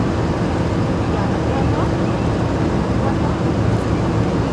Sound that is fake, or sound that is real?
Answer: real